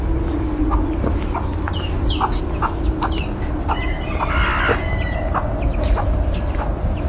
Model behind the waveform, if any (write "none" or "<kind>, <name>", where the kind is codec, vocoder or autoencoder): none